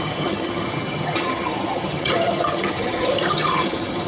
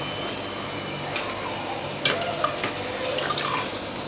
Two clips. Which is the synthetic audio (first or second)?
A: first